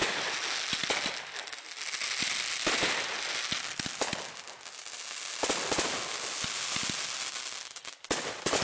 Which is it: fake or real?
real